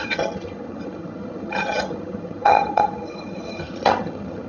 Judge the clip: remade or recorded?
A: remade